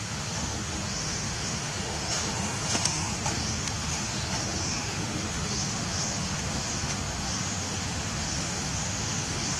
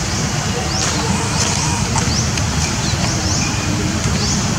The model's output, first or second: first